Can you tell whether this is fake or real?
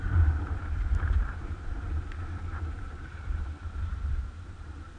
fake